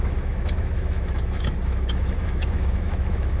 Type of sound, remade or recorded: remade